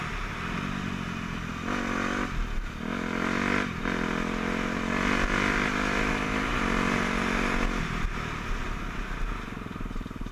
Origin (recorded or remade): recorded